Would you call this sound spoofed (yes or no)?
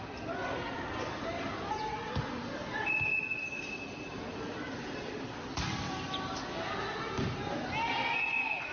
no